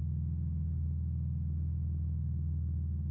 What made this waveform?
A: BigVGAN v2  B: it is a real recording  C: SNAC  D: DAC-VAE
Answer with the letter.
B